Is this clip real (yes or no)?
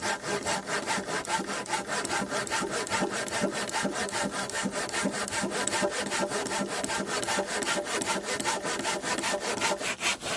yes